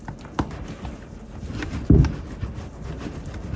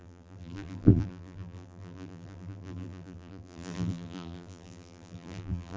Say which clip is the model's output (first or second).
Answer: second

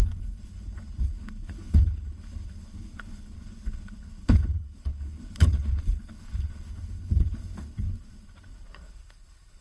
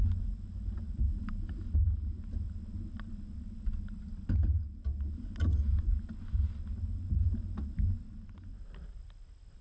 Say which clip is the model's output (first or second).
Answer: first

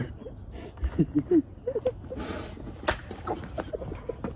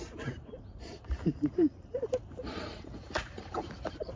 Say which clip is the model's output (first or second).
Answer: second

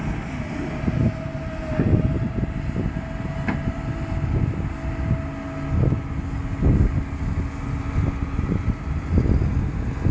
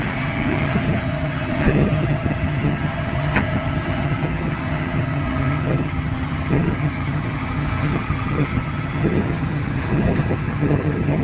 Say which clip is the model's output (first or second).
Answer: second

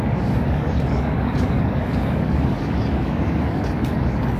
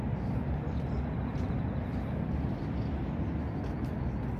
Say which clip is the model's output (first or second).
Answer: first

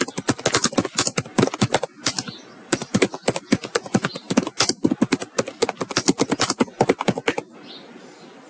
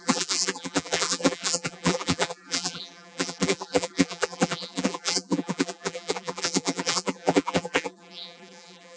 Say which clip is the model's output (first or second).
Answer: second